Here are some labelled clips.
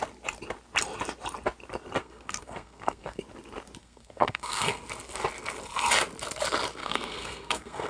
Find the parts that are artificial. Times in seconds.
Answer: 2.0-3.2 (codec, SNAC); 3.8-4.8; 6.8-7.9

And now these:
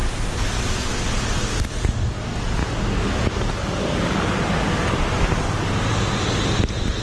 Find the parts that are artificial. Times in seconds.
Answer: none

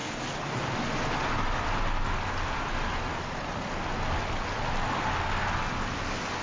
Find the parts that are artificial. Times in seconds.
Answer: none

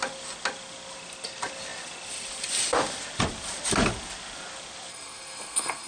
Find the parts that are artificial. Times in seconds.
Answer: 4.9-5.9 (codec, SNAC)

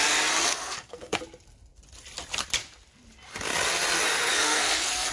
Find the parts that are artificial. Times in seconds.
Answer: 0.5-1.2 (codec, SNAC); 4.2-5.1

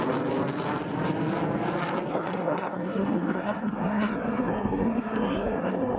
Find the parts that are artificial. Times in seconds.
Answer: 2.1-6.0 (codec, SNAC)

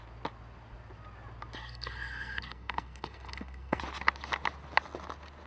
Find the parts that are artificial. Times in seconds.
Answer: 1.6-3.8 (codec, SNAC)

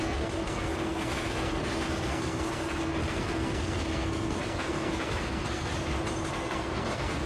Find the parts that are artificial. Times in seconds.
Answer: 0.0-5.7 (codec, SNAC); 6.3-7.3